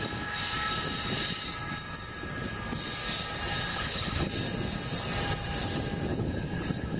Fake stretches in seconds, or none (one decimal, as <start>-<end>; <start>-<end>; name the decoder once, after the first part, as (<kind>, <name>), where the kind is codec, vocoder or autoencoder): 3.7-4.3 (codec, HILCodec); 6.1-7.0